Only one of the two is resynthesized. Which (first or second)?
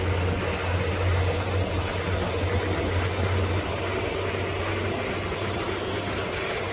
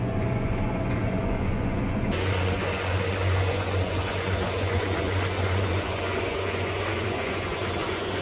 second